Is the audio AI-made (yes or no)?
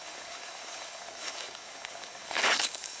yes